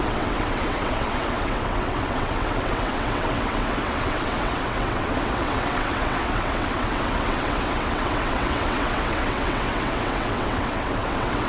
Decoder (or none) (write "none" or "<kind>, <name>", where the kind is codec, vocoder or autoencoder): vocoder, WaveNeXt